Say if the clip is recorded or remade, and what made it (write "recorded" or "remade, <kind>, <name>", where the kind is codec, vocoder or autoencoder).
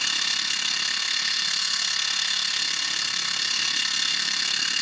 remade, codec, SNAC